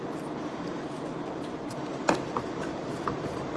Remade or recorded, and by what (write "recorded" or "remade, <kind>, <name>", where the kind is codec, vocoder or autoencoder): recorded